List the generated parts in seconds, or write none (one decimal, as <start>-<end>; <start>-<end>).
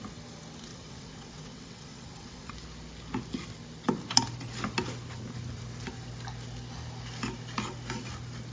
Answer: 0.7-2.5